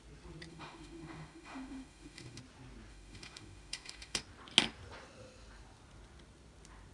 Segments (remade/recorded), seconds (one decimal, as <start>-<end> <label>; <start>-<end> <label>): 0.0-0.5 recorded; 0.5-2.4 remade; 2.4-2.9 recorded; 2.9-4.2 remade; 4.2-6.9 recorded